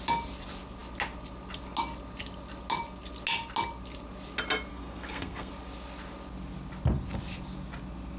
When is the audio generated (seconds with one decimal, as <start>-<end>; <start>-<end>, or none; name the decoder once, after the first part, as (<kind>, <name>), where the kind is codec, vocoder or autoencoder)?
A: 4.7-5.5 (codec, SNAC)